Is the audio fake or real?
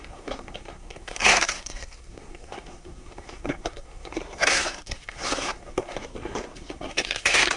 fake